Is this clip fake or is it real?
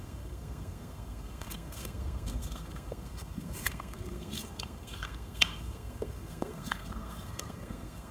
fake